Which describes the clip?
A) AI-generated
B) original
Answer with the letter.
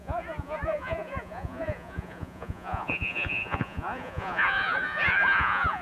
A